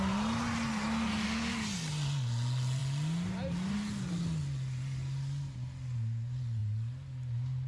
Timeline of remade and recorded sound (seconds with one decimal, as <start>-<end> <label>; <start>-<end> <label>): 0.0-7.7 recorded